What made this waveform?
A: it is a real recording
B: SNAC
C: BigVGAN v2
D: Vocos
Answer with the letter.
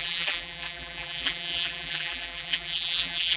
C